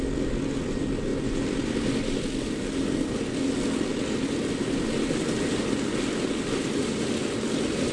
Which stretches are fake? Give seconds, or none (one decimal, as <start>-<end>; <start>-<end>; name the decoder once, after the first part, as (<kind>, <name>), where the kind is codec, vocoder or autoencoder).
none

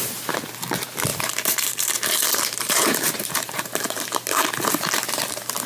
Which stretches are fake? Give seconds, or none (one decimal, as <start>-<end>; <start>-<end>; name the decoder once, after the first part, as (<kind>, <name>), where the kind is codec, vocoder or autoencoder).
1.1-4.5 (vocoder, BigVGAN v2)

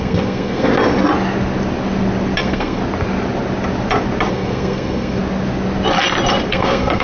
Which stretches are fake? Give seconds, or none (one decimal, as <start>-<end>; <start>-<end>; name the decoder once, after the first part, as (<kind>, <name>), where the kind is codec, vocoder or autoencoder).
0.0-0.7 (codec, SNAC); 2.4-2.8; 4.3-5.2; 6.5-7.0

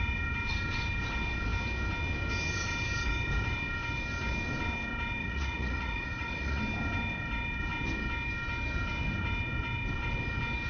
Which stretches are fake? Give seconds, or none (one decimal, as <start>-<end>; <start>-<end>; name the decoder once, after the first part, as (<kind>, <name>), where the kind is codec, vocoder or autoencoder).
5.2-6.6 (vocoder, Vocos)

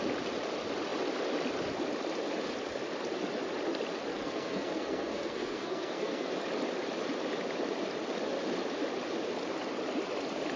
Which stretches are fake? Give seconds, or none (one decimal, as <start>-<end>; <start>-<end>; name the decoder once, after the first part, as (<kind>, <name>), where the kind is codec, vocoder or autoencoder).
4.1-6.3 (codec, SNAC)

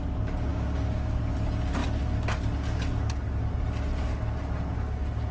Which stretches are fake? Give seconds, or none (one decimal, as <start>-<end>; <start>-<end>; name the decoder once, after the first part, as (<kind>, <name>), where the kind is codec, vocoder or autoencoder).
0.5-1.2 (codec, DAC)

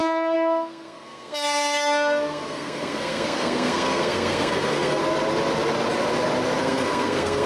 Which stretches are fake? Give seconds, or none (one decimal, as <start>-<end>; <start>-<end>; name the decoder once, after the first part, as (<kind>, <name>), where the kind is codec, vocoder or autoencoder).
0.0-5.0 (codec, SNAC); 6.6-7.5